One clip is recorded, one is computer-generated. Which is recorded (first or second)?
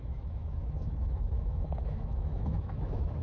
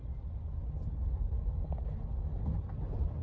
second